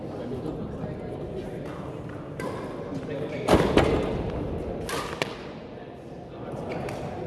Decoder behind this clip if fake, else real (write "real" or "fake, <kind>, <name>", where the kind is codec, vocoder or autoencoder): real